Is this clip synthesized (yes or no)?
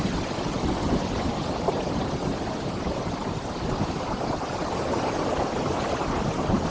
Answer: no